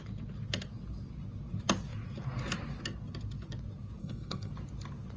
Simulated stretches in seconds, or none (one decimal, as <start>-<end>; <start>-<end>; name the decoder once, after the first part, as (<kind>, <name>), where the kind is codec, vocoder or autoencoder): 4.0-4.5 (codec, SNAC)

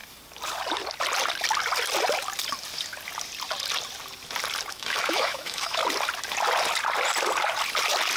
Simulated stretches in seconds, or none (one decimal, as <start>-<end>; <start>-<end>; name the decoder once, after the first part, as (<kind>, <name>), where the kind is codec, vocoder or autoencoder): 4.7-5.8 (autoencoder, DAC-VAE)